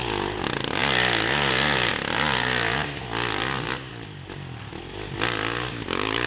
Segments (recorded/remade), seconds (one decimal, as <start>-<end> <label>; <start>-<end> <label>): 0.0-6.3 recorded